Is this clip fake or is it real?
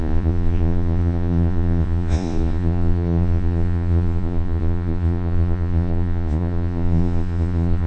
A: fake